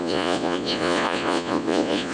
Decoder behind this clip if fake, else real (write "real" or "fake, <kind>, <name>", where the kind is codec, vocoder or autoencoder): fake, vocoder, Vocos